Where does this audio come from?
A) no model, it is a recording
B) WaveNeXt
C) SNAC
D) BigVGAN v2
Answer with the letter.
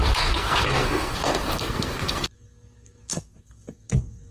C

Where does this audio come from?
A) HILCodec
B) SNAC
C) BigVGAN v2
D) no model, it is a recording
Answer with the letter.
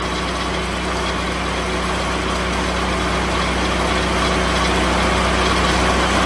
D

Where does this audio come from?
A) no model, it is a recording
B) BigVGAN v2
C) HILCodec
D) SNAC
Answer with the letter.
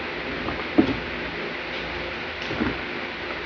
A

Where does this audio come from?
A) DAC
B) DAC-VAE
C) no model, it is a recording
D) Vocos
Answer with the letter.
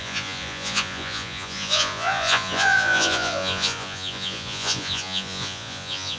D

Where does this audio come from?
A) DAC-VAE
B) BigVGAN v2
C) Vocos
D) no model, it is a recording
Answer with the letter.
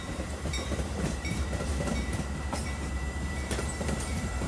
B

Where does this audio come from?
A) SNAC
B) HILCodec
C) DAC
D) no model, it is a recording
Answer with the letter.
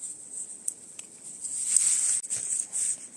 D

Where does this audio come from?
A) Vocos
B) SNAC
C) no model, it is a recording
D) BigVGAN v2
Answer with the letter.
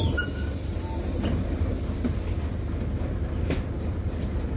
C